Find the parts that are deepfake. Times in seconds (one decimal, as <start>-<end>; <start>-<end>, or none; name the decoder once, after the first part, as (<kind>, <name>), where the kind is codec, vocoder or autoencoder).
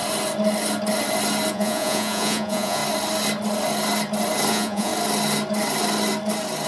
1.5-2.8 (vocoder, Vocos); 4.5-4.9